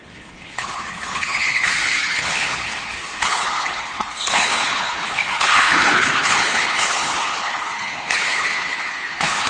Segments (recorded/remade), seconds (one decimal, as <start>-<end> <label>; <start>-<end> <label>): 0.0-9.5 remade